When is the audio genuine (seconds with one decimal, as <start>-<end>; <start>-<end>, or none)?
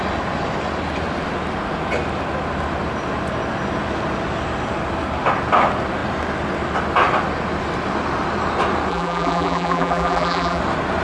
0.0-8.9; 10.6-11.0